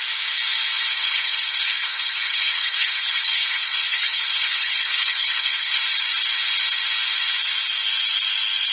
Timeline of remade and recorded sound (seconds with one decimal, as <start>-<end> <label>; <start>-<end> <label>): 0.0-0.9 recorded; 0.9-5.8 remade; 5.8-8.7 recorded